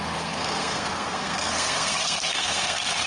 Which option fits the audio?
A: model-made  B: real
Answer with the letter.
A